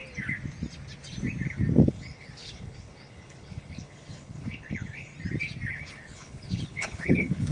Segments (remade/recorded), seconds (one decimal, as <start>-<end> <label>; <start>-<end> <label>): 0.0-1.8 recorded; 1.8-5.1 remade; 5.1-5.7 recorded; 5.7-7.5 remade